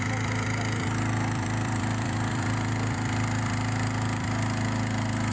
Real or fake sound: fake